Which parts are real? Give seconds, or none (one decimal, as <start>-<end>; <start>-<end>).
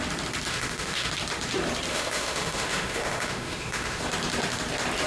0.0-0.5; 1.1-1.9; 4.0-5.1